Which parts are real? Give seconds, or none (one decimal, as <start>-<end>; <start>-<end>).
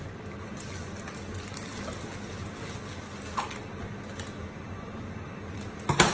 0.0-6.1